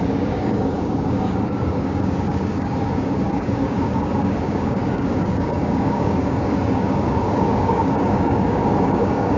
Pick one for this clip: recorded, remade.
remade